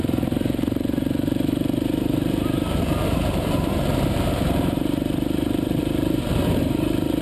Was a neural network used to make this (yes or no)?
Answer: yes